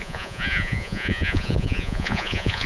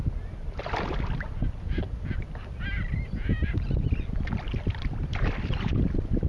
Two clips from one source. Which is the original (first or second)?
second